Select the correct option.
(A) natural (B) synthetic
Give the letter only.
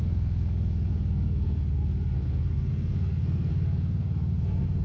B